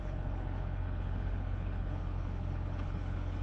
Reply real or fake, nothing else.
fake